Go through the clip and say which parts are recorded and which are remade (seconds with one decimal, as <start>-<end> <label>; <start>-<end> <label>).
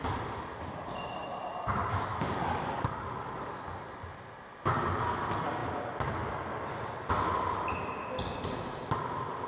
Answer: 0.0-2.1 recorded; 2.1-3.6 remade; 3.6-9.5 recorded